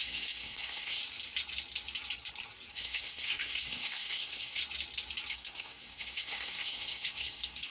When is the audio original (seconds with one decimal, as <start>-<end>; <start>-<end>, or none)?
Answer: 1.0-2.7; 4.6-5.3